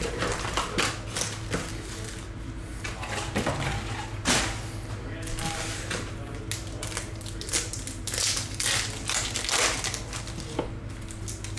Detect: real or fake real